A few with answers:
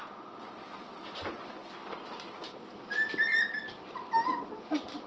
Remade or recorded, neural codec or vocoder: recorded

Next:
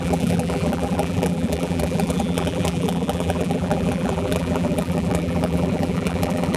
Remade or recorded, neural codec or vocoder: remade, vocoder, BigVGAN v2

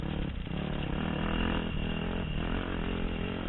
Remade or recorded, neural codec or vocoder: recorded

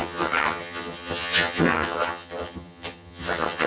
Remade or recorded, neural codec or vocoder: remade, vocoder, HiFi-GAN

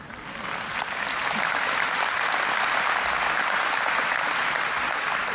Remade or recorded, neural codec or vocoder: recorded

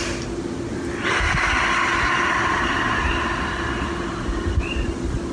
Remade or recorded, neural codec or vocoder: recorded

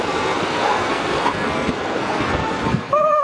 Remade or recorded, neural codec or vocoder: remade, codec, SNAC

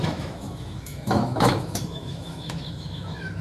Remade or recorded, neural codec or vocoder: remade, autoencoder, DAC-VAE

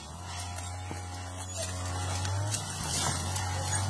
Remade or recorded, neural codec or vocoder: recorded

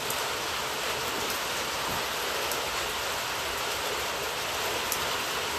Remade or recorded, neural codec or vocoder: recorded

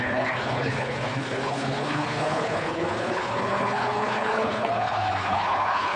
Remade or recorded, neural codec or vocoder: remade, codec, HILCodec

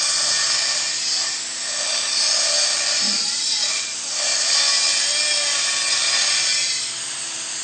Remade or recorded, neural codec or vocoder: recorded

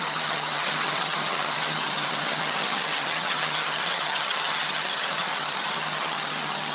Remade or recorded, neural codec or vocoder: remade, vocoder, HiFi-GAN